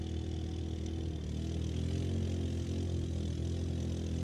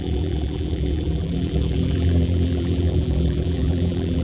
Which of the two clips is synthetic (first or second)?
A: second